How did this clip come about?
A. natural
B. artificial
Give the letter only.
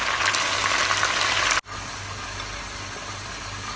A